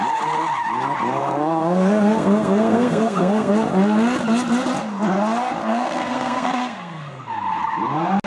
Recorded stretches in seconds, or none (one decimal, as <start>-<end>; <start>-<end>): 0.0-1.2; 3.5-5.6; 7.2-8.3